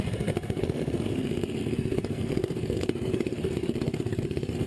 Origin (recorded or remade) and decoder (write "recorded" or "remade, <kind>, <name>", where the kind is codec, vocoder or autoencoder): remade, codec, SNAC